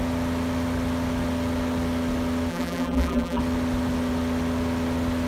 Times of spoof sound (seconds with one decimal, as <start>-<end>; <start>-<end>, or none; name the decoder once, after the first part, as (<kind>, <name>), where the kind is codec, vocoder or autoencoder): 2.5-3.4 (vocoder, BigVGAN v2)